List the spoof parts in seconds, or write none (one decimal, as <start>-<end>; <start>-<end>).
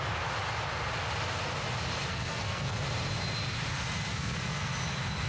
2.1-2.8; 4.1-4.7